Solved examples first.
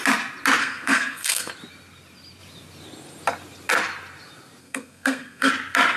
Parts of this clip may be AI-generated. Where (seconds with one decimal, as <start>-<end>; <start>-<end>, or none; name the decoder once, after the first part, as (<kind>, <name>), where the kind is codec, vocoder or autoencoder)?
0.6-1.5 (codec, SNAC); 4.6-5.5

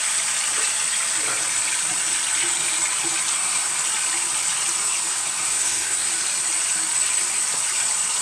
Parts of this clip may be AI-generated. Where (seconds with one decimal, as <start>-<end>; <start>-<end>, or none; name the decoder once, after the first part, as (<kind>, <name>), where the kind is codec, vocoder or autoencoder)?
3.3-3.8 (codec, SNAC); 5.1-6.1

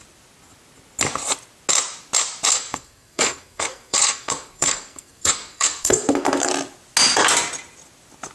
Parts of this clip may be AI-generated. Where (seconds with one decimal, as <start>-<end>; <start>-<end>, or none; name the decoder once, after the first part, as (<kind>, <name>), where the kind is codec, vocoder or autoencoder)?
2.5-6.5 (codec, SNAC)

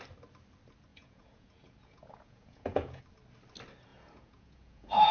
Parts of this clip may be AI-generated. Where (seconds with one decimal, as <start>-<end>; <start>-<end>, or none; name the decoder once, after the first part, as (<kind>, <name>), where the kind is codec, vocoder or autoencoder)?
0.9-3.0 (vocoder, Vocos); 3.9-5.1

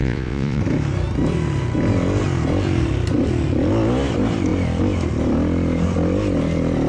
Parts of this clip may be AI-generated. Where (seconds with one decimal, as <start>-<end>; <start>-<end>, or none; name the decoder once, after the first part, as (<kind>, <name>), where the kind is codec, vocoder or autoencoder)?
0.0-0.6 (vocoder, Vocos)

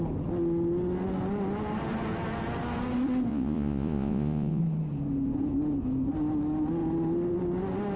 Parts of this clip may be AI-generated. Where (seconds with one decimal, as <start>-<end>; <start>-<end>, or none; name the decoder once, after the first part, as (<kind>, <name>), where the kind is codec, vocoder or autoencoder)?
3.3-4.6 (vocoder, Vocos)

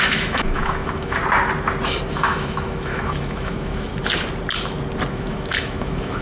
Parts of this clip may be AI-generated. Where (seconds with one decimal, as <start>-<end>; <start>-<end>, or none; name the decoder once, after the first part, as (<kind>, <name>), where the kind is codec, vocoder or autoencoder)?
0.0-1.2 (autoencoder, DAC-VAE); 2.1-3.9; 5.1-6.2

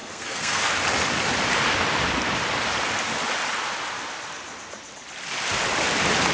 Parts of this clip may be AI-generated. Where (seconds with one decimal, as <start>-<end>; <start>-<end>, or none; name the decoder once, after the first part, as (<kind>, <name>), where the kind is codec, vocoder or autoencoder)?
0.0-0.7 (codec, SNAC)